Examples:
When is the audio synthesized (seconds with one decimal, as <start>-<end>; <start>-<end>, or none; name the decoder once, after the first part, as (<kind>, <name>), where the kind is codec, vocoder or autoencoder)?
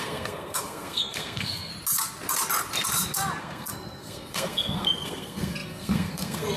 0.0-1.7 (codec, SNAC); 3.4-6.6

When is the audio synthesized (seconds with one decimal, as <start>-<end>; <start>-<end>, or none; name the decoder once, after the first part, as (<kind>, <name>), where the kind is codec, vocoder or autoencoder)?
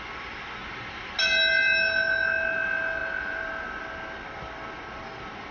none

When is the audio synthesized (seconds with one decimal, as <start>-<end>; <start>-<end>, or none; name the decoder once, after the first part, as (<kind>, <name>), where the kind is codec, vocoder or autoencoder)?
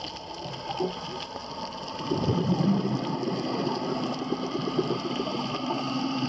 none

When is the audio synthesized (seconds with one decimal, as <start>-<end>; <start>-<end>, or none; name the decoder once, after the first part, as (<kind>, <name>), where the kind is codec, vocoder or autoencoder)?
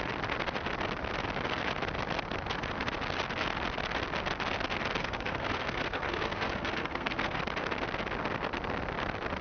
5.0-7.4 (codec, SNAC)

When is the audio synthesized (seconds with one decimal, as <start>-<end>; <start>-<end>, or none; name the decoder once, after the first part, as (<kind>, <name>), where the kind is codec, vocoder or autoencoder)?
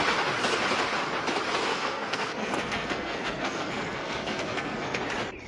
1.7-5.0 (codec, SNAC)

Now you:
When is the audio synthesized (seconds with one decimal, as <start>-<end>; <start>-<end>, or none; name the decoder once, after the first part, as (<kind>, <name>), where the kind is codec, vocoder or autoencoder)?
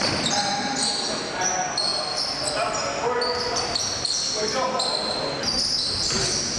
none